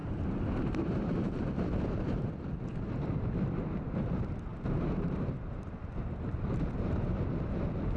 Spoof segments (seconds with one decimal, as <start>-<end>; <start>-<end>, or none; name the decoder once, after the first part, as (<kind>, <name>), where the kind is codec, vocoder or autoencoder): 0.0-1.8 (vocoder, BigVGAN v2); 4.5-5.3